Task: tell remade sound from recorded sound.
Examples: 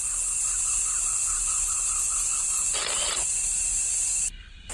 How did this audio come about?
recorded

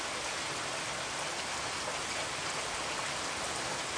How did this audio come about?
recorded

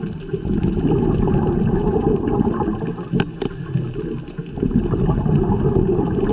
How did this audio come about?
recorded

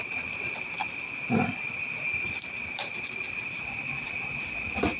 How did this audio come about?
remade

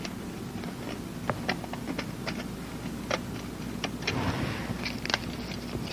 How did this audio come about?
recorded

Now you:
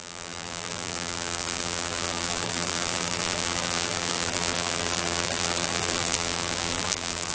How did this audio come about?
remade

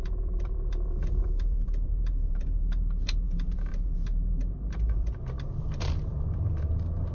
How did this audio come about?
remade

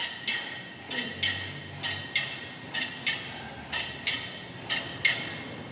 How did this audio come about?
recorded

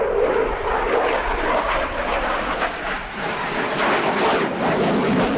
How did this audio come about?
recorded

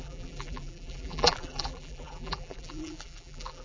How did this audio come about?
remade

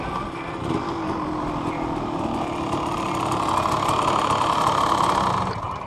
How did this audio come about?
recorded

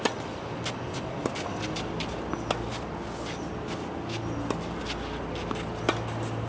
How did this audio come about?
recorded